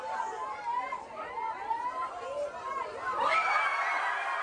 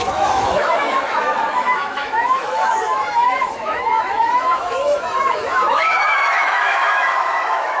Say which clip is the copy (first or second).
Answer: second